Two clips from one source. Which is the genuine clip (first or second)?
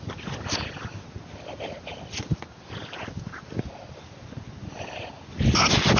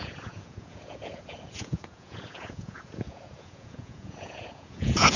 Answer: first